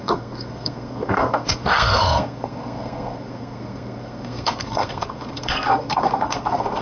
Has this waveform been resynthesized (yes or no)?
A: yes